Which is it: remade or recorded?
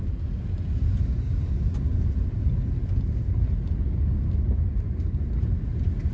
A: recorded